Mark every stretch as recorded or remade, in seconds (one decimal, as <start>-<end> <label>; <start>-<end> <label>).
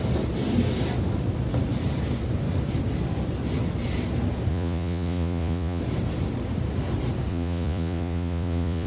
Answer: 0.0-4.5 recorded; 4.5-5.8 remade; 5.8-7.3 recorded; 7.3-8.9 remade